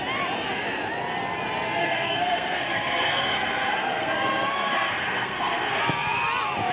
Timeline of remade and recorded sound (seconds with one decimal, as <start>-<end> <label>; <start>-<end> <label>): 0.0-1.8 recorded; 1.8-5.8 remade; 5.8-6.7 recorded